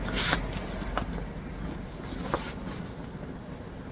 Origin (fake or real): real